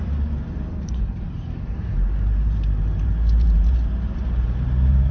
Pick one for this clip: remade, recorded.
remade